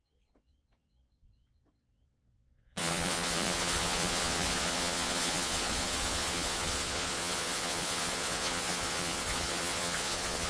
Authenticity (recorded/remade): remade